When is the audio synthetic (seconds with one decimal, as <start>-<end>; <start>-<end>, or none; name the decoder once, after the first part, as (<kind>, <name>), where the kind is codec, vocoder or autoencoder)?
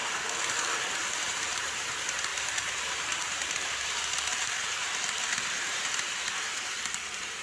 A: 1.0-1.9 (vocoder, BigVGAN v2); 2.3-6.7